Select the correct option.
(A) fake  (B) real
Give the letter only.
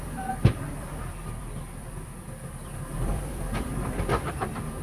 A